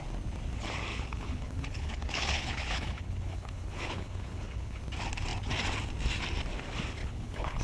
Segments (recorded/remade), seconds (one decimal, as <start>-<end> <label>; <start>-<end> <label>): 0.0-0.9 recorded; 0.9-4.8 remade; 4.8-7.0 recorded; 7.0-7.6 remade